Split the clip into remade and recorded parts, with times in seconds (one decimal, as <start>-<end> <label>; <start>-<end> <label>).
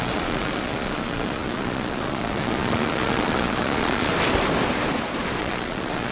0.0-4.1 remade; 4.1-5.4 recorded; 5.4-6.1 remade